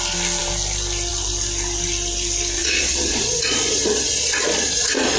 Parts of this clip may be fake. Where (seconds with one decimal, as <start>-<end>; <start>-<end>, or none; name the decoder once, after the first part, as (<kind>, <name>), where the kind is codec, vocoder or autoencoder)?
2.6-5.2 (vocoder, Vocos)